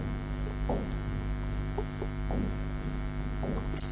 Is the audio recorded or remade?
recorded